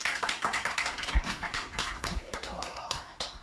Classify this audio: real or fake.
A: fake